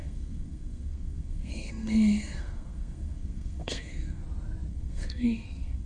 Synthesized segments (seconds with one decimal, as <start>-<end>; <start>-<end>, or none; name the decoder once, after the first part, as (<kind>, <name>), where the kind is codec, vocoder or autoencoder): 0.0-4.2 (codec, SNAC); 4.7-5.9